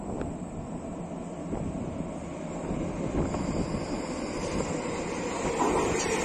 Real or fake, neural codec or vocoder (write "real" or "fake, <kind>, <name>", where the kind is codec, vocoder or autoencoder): real